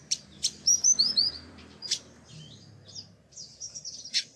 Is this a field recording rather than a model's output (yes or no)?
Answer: no